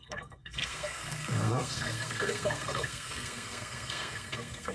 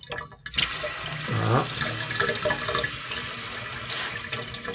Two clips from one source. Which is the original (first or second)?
second